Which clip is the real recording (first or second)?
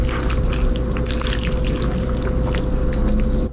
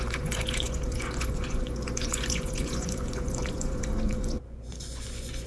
first